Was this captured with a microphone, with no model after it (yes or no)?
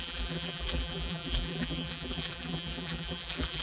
no